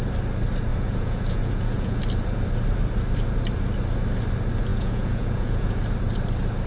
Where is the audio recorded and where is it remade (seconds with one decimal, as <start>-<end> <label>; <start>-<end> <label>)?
0.0-0.7 recorded; 0.7-2.0 remade; 2.0-4.7 recorded; 4.7-5.8 remade; 5.8-6.7 recorded